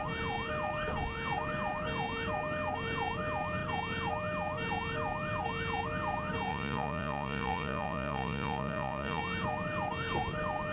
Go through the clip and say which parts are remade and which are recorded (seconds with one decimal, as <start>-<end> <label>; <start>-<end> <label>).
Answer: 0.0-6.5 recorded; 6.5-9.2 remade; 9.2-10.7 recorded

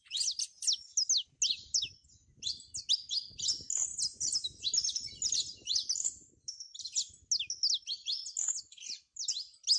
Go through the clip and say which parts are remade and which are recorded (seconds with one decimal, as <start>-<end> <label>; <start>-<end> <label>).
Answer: 0.0-9.8 recorded

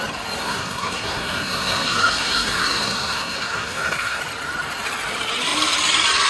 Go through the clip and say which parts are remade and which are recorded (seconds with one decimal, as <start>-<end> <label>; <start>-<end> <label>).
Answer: 0.0-0.4 recorded; 0.4-4.2 remade; 4.2-6.3 recorded

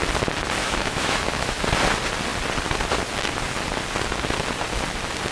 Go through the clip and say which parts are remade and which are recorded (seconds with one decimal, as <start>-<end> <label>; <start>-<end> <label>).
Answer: 0.0-0.6 recorded; 0.6-1.6 remade; 1.6-5.3 recorded

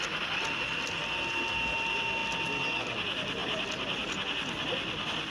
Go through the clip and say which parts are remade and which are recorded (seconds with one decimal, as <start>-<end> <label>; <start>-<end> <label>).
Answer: 0.0-5.3 recorded